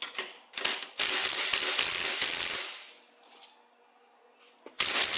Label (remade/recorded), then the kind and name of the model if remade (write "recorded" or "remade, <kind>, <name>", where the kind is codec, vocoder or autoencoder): recorded